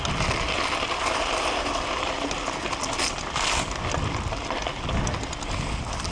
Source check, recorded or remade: recorded